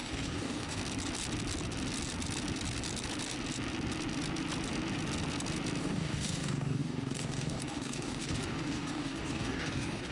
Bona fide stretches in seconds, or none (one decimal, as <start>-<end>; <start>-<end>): 0.8-5.8

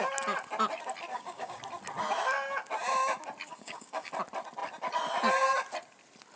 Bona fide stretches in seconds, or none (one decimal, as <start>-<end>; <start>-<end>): 0.0-1.1; 1.6-3.5; 4.1-6.4

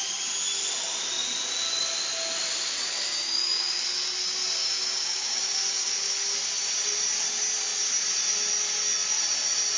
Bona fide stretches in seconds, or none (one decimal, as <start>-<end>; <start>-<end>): 0.0-3.1; 3.8-4.6; 6.1-9.8

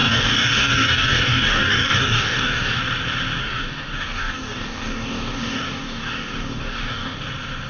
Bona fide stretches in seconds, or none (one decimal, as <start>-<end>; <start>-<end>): 2.8-3.4; 7.2-7.7

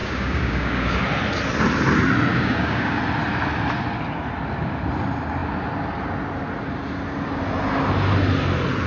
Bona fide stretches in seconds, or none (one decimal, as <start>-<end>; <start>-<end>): 1.0-2.3; 3.0-8.9

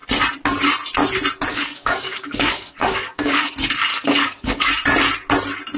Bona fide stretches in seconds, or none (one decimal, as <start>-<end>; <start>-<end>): 0.0-1.5; 3.5-3.9; 4.7-5.8

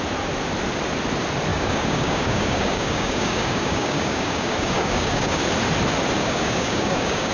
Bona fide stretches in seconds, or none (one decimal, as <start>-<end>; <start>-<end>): 0.0-1.5; 5.4-6.2

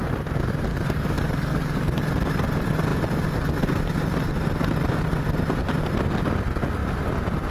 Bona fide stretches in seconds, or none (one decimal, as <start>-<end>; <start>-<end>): 0.0-0.7; 2.0-7.5